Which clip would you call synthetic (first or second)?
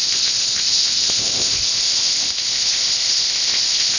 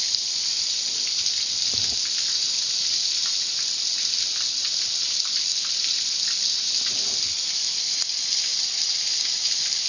first